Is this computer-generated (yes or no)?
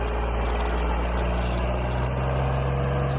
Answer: no